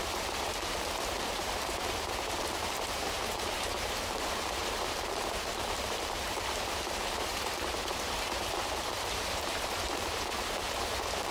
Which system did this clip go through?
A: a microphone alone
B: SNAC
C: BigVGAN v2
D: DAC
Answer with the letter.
C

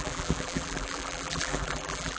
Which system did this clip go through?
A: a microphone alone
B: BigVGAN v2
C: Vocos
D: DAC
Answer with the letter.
B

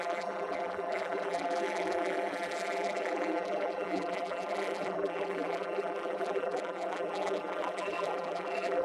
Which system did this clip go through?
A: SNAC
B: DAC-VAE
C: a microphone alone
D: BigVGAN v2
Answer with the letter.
D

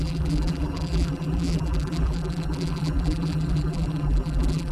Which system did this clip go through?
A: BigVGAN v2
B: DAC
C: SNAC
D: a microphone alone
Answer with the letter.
A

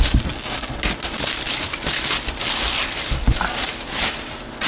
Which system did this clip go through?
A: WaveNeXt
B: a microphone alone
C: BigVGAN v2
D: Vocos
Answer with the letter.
B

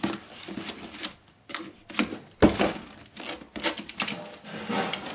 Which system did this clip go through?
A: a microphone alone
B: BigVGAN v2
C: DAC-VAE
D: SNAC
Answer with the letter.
A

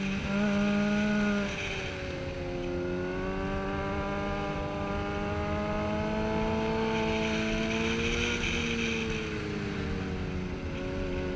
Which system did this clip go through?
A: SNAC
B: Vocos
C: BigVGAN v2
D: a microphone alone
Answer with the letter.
D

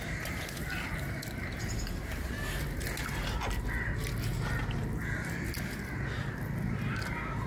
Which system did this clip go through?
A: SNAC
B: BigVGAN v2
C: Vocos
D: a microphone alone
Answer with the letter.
D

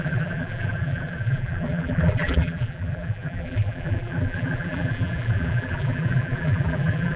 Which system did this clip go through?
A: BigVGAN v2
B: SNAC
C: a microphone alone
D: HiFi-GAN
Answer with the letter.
A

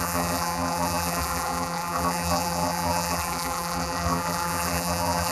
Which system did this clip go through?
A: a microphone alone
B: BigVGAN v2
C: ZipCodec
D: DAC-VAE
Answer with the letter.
B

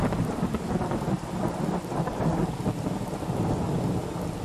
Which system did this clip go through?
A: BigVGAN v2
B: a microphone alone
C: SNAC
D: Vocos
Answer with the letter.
B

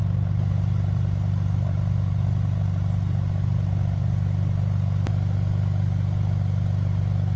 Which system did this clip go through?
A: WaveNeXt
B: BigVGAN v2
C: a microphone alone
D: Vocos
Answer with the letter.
C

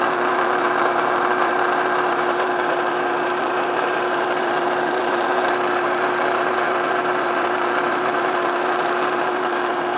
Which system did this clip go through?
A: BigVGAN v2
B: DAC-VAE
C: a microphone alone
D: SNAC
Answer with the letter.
A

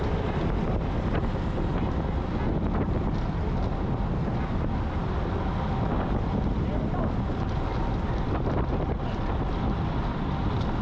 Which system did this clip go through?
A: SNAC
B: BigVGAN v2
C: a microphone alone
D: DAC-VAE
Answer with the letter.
C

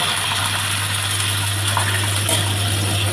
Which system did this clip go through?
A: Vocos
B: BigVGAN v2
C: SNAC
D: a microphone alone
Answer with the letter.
D